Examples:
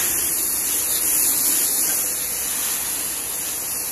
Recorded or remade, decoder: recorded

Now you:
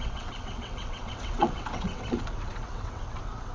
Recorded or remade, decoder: remade, vocoder, WaveNeXt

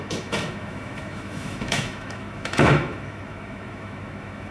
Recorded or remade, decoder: remade, autoencoder, DAC-VAE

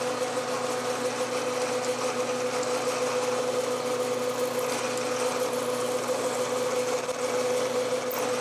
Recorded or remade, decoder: recorded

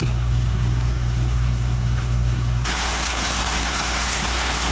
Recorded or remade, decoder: remade, codec, SNAC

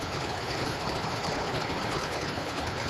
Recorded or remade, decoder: remade, codec, HILCodec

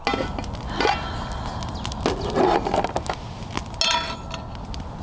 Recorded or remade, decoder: recorded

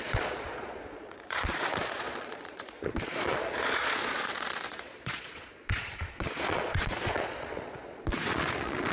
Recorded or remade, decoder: remade, vocoder, Vocos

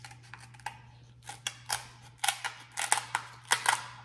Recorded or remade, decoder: recorded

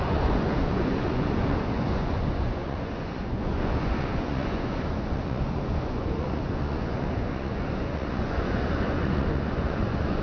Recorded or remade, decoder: remade, vocoder, Vocos